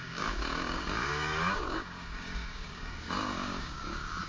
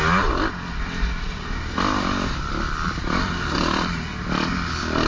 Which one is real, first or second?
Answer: second